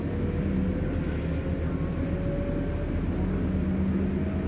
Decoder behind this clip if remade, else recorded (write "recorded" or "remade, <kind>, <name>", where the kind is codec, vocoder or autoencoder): recorded